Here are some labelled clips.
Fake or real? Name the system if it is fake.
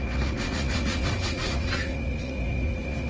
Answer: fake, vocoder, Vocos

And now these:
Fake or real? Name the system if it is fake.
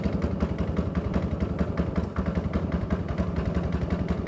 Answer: real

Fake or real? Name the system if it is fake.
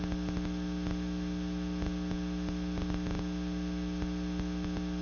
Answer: real